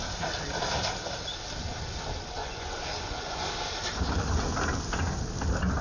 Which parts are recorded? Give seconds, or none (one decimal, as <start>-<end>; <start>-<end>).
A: 0.0-2.4; 3.5-5.8